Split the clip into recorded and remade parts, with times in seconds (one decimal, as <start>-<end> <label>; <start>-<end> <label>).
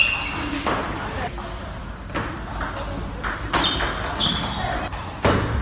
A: 0.0-5.6 recorded